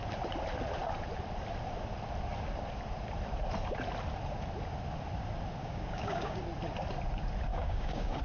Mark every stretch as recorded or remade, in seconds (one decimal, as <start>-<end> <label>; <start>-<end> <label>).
0.0-5.6 recorded; 5.6-6.4 remade; 6.4-7.5 recorded; 7.5-8.2 remade